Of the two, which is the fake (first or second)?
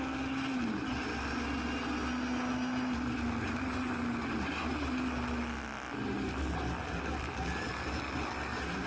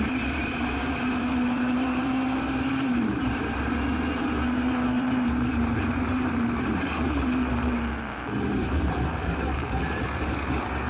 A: second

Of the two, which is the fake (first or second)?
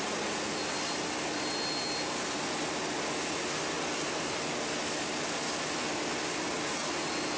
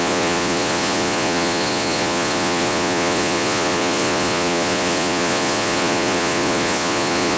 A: second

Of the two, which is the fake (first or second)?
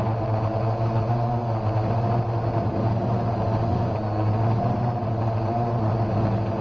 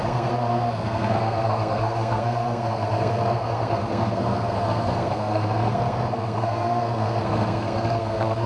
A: second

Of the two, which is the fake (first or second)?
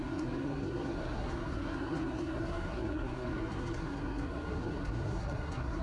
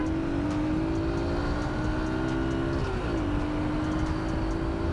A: first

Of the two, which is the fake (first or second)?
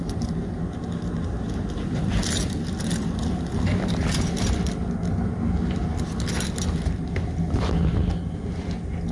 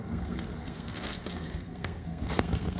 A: second